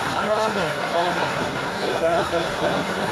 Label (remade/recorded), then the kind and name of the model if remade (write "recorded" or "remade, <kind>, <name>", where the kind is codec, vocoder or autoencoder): remade, codec, SNAC